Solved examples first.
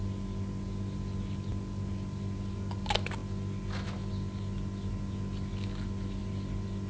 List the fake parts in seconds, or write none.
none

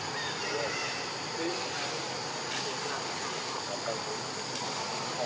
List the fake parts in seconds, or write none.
none

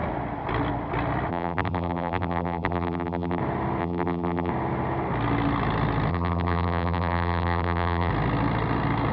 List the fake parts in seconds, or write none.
1.3-3.4 (vocoder, BigVGAN v2); 3.8-4.5; 6.1-8.1

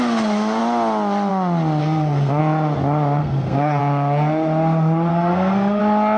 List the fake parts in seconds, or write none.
1.8-2.4 (codec, SNAC); 3.2-3.8; 5.1-5.8